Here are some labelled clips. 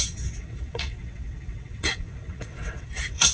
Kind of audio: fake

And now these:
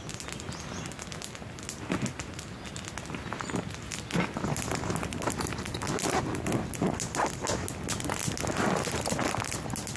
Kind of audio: real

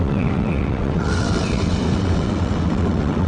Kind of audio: fake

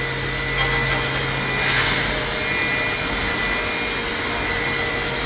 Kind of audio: real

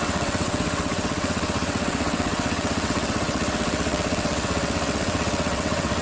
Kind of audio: fake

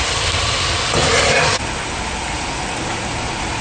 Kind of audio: real